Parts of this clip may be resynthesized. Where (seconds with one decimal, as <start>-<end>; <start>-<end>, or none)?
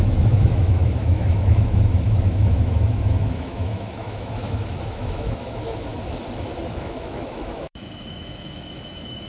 0.0-5.9; 6.7-9.3